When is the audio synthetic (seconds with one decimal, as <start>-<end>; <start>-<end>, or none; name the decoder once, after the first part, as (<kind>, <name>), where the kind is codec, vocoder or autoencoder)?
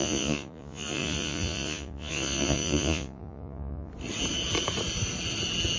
0.0-3.9 (vocoder, Vocos)